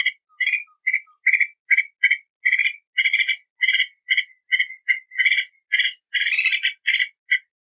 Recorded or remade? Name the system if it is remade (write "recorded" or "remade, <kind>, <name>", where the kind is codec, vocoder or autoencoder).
recorded